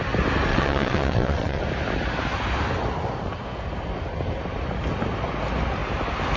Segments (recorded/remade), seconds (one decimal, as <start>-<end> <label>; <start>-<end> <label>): 0.0-0.5 recorded; 0.5-1.6 remade; 1.6-6.4 recorded